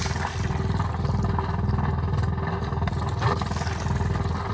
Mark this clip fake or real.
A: real